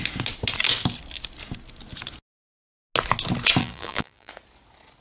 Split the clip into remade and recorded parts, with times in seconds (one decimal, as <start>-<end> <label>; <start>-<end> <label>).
0.0-3.6 recorded; 3.6-4.3 remade; 4.3-5.0 recorded